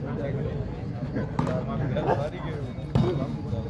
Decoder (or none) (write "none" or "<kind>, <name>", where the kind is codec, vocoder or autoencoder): none